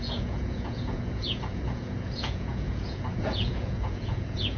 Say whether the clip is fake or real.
fake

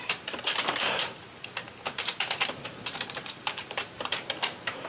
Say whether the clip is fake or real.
fake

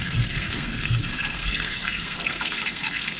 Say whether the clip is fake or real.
fake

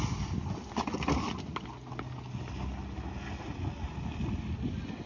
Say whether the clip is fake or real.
real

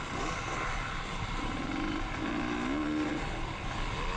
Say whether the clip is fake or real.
real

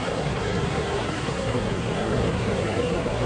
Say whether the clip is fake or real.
fake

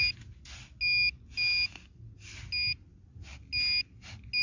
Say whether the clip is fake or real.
real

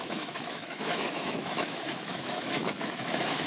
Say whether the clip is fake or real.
fake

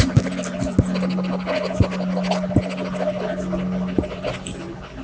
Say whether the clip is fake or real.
real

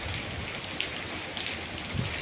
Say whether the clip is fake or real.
real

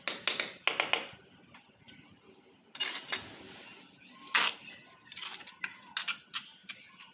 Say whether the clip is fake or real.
real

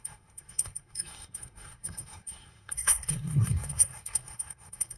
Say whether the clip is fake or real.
fake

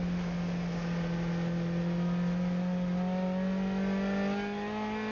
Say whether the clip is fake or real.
real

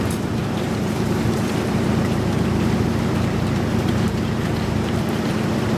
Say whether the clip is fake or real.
fake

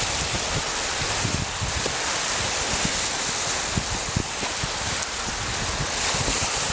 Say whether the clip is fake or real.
real